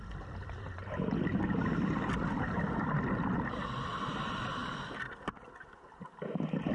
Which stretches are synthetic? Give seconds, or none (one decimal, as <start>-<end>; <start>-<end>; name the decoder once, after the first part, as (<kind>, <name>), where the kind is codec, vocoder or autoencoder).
none

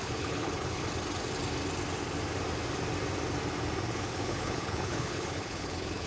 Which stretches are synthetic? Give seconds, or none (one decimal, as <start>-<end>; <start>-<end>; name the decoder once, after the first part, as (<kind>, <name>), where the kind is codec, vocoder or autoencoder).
0.0-0.8 (codec, HILCodec); 3.9-6.1

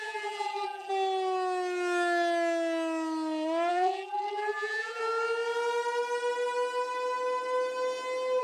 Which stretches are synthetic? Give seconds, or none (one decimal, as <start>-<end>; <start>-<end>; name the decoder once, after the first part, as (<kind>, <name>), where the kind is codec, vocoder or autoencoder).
0.0-0.9 (vocoder, BigVGAN v2); 3.7-5.0

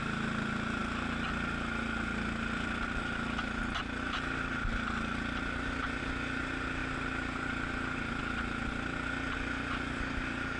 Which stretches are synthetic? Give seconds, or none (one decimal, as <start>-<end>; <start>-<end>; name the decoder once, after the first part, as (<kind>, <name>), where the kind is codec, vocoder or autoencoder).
none